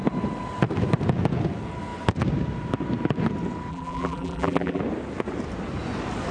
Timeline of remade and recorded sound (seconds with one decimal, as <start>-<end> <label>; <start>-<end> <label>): 0.0-3.7 recorded; 3.7-4.8 remade; 4.8-6.3 recorded

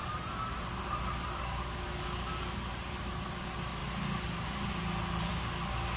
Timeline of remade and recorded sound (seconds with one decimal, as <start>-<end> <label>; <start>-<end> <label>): 0.0-3.4 remade; 3.4-3.8 recorded; 3.8-6.0 remade

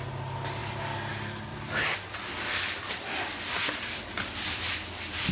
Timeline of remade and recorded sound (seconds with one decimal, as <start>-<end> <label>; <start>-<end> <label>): 0.0-0.6 recorded; 0.6-1.1 remade; 1.1-1.5 recorded; 1.5-4.7 remade; 4.7-5.3 recorded

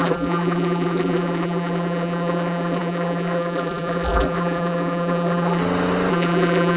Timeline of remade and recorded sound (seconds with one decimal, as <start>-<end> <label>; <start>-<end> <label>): 0.0-5.6 remade; 5.6-6.1 recorded; 6.1-6.8 remade